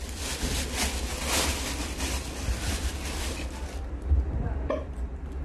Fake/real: real